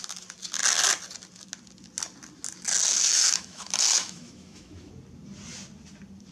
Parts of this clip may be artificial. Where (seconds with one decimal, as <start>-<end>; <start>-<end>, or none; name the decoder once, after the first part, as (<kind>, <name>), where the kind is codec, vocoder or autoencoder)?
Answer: 2.9-4.9 (autoencoder, DAC-VAE)

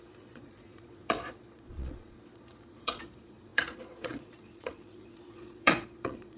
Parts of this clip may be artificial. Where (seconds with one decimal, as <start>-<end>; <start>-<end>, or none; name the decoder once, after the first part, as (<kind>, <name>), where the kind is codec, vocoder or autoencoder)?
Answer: 0.0-6.4 (vocoder, Vocos)

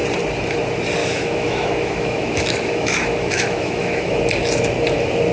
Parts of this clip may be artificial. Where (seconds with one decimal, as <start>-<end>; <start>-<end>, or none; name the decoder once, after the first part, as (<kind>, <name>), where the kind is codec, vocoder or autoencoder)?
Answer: 1.0-4.2 (autoencoder, DAC-VAE)

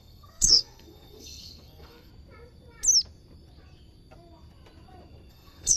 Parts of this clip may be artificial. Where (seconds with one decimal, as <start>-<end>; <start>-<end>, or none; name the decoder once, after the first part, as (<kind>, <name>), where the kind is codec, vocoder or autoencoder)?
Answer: 0.0-2.1 (codec, SNAC); 5.3-5.8

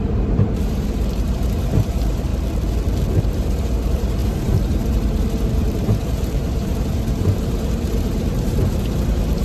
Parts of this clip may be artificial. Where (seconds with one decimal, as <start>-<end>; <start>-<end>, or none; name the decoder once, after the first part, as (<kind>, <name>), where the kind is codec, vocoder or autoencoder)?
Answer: 0.0-2.3 (vocoder, BigVGAN v2); 3.2-9.4